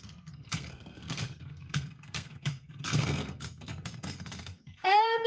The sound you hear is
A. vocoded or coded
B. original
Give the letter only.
A